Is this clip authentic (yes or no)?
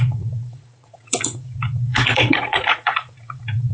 no